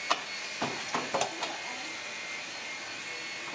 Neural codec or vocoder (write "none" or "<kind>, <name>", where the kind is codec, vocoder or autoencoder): none